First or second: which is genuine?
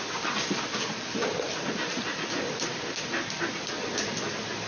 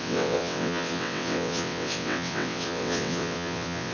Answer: first